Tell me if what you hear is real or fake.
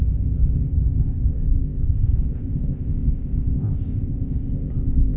fake